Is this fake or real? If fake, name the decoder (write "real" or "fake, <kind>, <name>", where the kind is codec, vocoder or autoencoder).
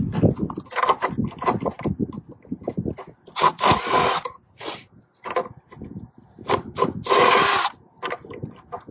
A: real